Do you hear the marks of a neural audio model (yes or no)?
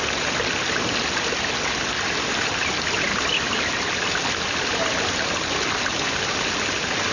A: no